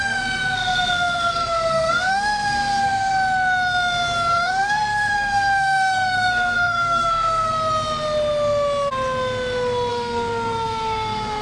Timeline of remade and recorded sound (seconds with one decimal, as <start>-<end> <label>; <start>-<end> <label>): 0.0-3.1 remade; 3.1-4.3 recorded; 4.3-7.5 remade; 7.5-9.9 recorded; 9.9-11.4 remade